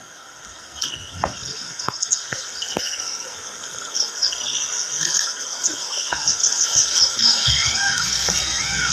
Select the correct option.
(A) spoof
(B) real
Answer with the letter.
A